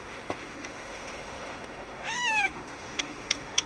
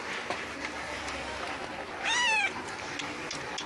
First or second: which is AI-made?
first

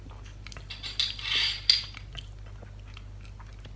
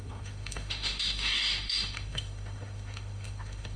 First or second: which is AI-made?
second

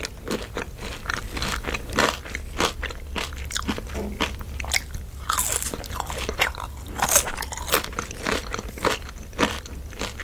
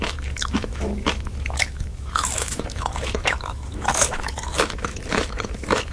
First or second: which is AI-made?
second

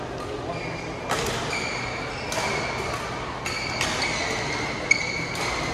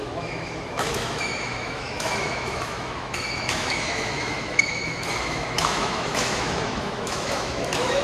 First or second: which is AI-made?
second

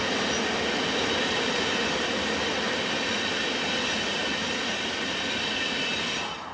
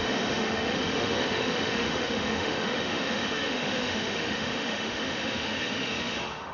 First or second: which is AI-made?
second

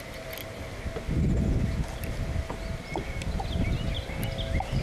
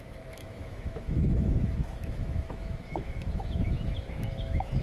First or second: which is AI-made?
second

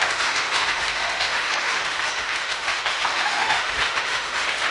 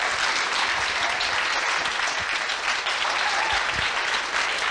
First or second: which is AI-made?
first